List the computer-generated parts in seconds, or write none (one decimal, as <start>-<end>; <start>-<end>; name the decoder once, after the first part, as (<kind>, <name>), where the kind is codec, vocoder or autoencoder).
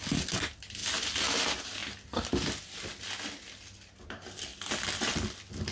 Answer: none